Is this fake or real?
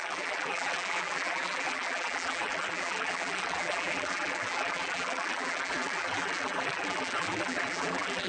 fake